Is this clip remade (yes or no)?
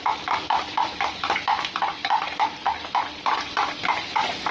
no